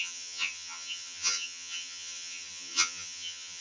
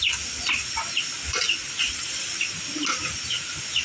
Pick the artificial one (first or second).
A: first